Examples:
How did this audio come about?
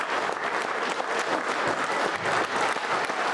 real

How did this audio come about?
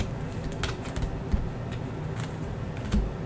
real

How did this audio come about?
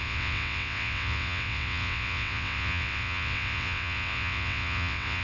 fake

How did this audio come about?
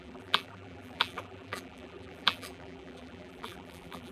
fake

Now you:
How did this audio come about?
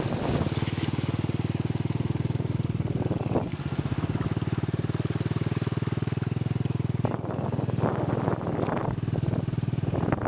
real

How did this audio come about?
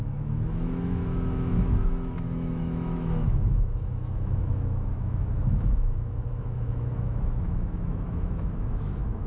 fake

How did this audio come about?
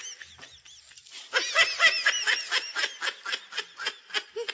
real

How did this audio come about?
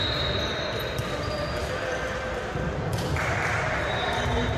real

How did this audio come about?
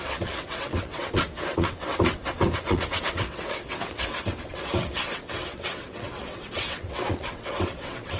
fake